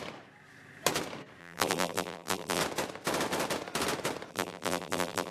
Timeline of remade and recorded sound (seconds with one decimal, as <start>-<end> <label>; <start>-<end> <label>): 0.0-1.4 recorded; 1.4-2.6 remade; 2.6-4.3 recorded; 4.3-5.3 remade